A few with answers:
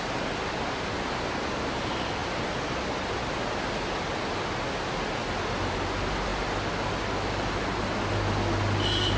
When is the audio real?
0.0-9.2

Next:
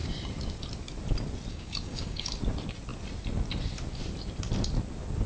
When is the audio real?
0.0-1.5; 2.3-5.3

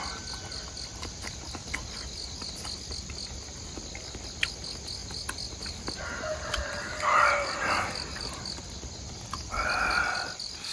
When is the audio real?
0.0-10.7

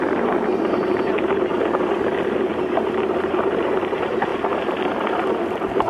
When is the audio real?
1.5-2.6; 4.3-5.9

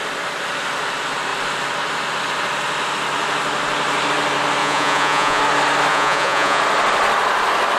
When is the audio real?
0.0-4.6; 5.4-5.9; 6.6-7.8

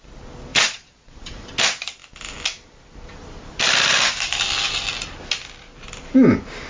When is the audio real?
0.0-0.5; 1.5-6.7

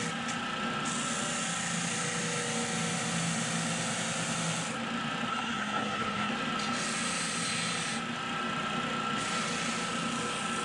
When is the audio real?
0.0-5.3; 6.3-10.6

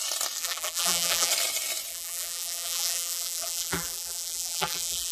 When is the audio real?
0.0-0.4; 1.3-1.9